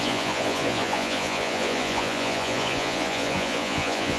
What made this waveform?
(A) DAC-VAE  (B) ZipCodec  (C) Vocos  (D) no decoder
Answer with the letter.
C